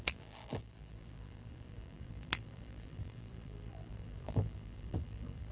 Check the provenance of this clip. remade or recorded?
remade